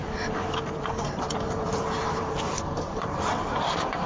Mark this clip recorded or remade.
remade